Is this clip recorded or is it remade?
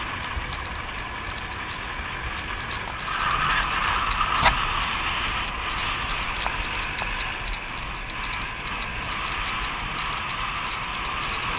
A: recorded